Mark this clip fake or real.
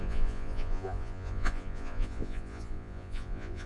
fake